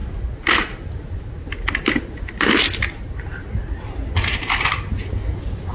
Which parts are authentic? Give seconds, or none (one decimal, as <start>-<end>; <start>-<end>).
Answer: 0.0-5.7